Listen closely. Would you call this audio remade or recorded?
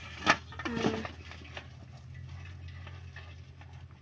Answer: recorded